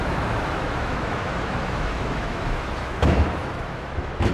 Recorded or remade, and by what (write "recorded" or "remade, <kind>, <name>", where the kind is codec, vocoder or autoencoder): remade, autoencoder, DAC-VAE